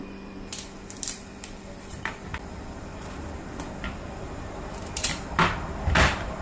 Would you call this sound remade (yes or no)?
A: yes